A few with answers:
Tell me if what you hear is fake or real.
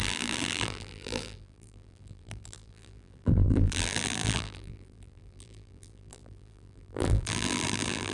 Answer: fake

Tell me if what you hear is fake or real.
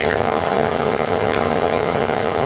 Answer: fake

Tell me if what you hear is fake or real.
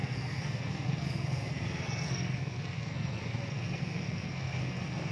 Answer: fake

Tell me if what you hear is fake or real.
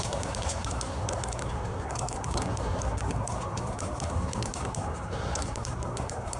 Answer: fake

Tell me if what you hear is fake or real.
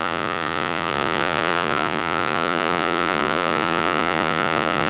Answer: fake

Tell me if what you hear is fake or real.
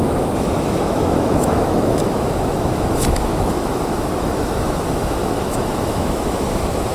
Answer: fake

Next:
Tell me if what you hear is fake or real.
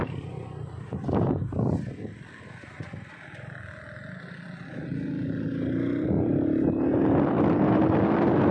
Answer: real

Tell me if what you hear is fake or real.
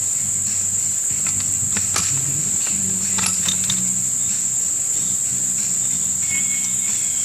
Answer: real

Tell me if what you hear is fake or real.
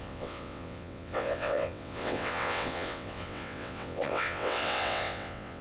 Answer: fake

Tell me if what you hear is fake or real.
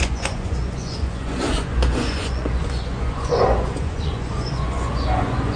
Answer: fake